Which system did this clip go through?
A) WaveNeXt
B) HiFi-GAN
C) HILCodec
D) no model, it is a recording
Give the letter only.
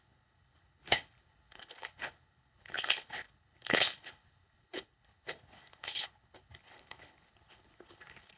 C